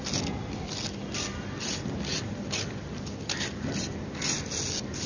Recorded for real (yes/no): yes